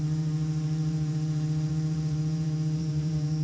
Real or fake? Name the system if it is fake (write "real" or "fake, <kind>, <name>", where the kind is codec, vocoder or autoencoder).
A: fake, vocoder, BigVGAN v2